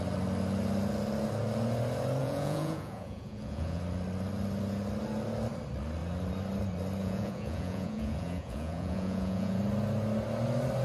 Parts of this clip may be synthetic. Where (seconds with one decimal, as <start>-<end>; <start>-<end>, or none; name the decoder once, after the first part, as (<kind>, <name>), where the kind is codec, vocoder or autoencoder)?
2.2-3.8 (vocoder, Vocos); 7.0-9.6